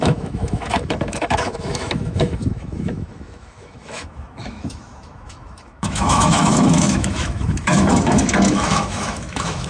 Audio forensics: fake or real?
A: fake